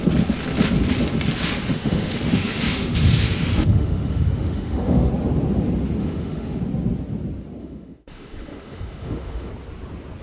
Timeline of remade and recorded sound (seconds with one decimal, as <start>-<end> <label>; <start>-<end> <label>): 0.0-1.7 recorded; 1.7-5.1 remade; 5.1-6.0 recorded; 6.0-6.6 remade; 6.6-7.6 recorded; 7.6-9.5 remade; 9.5-10.2 recorded